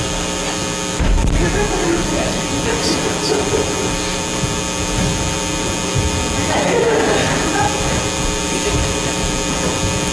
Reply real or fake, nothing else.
real